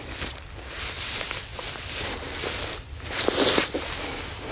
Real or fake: real